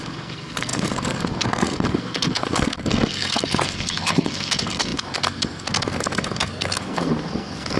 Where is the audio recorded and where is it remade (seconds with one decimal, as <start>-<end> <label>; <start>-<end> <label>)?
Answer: 0.0-7.8 remade